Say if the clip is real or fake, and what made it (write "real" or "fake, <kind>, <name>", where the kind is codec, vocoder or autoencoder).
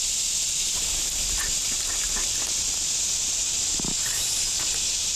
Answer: real